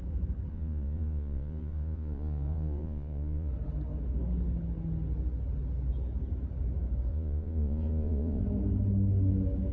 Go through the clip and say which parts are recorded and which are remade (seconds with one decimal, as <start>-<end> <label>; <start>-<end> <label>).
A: 0.0-0.5 recorded; 0.5-3.5 remade; 3.5-7.1 recorded; 7.1-8.4 remade; 8.4-9.7 recorded